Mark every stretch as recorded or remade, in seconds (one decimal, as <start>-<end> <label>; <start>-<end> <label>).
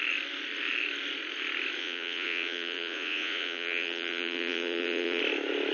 0.0-1.8 recorded; 1.8-5.2 remade; 5.2-5.7 recorded